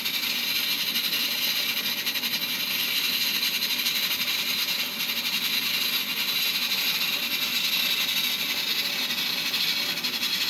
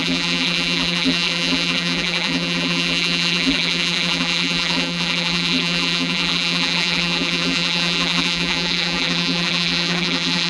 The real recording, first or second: first